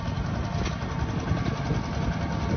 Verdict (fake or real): real